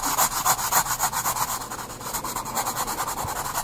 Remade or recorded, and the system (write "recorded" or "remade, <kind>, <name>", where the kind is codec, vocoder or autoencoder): recorded